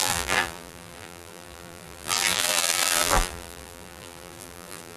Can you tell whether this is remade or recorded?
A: remade